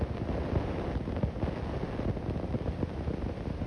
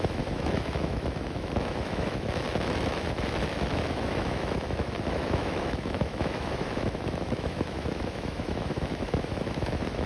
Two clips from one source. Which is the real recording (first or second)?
first